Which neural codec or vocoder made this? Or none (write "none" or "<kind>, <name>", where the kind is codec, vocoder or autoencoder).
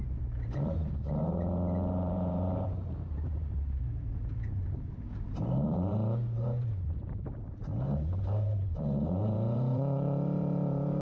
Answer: vocoder, BigVGAN v2